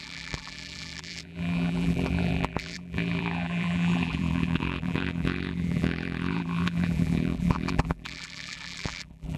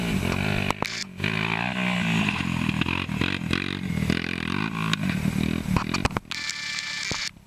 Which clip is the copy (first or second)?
first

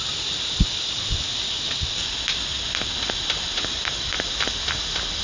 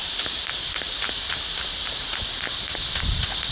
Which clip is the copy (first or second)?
second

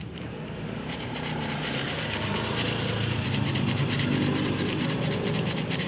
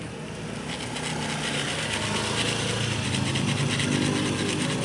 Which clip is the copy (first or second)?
first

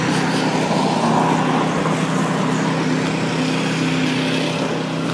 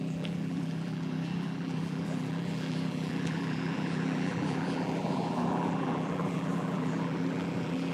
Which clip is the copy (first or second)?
second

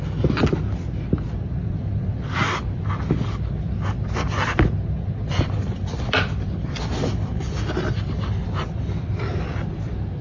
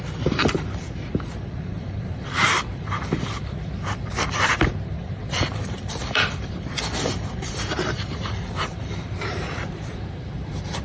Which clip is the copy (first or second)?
second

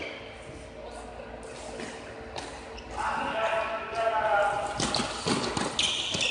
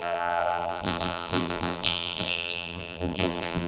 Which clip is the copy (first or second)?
second